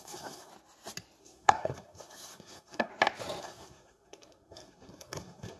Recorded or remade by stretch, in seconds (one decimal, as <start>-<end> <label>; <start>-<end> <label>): 0.0-0.5 remade; 0.5-1.2 recorded; 1.2-2.9 remade; 2.9-3.4 recorded; 3.4-5.6 remade